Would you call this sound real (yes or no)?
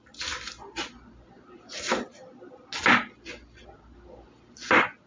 yes